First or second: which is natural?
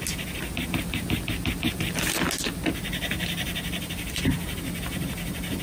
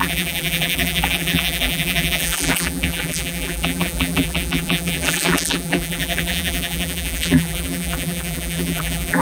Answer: first